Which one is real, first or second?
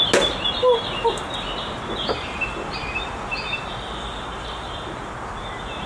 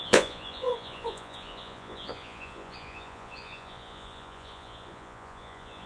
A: first